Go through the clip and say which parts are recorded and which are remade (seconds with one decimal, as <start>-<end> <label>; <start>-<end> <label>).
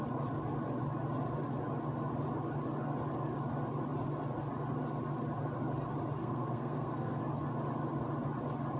0.0-6.2 recorded; 6.2-7.2 remade; 7.2-8.8 recorded